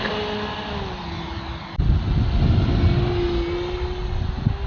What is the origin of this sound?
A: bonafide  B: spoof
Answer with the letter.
A